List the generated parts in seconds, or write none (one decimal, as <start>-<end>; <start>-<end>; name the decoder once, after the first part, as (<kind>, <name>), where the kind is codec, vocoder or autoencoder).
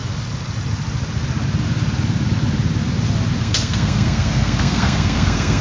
3.4-5.6 (codec, SNAC)